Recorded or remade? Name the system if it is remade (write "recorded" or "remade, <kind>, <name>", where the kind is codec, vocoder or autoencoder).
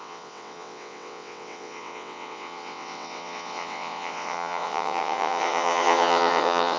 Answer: remade, vocoder, WaveNeXt